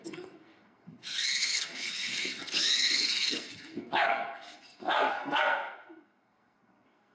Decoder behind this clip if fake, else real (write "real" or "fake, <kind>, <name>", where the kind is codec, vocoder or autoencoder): fake, codec, SNAC